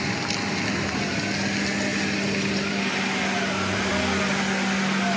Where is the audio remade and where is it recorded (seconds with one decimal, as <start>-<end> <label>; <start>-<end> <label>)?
0.0-5.2 recorded